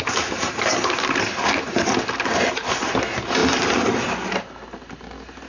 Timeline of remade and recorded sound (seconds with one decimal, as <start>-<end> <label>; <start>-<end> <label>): 0.0-5.5 recorded